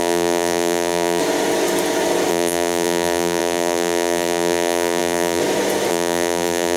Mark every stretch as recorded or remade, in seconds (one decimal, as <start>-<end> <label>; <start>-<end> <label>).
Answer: 0.0-1.2 remade; 1.2-2.3 recorded; 2.3-5.4 remade; 5.4-5.9 recorded; 5.9-6.8 remade

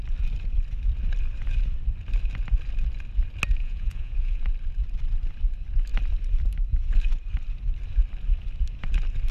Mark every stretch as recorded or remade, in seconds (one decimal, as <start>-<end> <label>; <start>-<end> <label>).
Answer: 0.0-3.6 recorded; 3.6-4.4 remade; 4.4-9.3 recorded

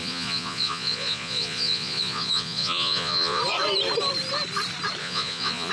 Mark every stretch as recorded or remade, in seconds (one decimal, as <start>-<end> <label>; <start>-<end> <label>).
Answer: 0.0-3.4 remade; 3.4-5.0 recorded; 5.0-5.7 remade

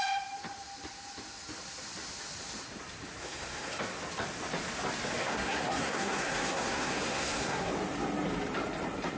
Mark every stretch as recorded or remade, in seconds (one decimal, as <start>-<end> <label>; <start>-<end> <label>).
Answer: 0.0-3.2 recorded; 3.2-3.8 remade; 3.8-5.2 recorded; 5.2-7.7 remade; 7.7-9.2 recorded

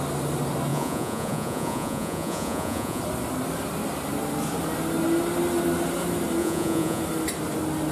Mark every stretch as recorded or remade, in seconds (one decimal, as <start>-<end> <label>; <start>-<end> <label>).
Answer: 0.0-0.7 recorded; 0.7-3.0 remade; 3.0-6.4 recorded; 6.4-7.0 remade; 7.0-7.9 recorded

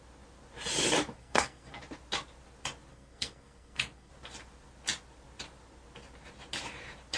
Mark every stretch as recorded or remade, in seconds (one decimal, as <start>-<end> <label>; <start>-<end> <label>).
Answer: 0.0-1.2 recorded; 1.2-1.8 remade; 1.8-2.9 recorded; 2.9-4.1 remade; 4.1-7.2 recorded

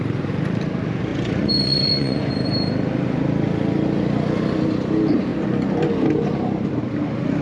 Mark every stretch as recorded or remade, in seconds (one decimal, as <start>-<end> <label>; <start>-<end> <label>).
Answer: 0.0-1.1 recorded; 1.1-2.3 remade; 2.3-7.4 recorded

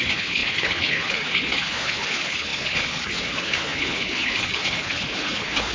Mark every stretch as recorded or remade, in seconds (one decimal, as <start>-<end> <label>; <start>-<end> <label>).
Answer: 0.0-5.7 remade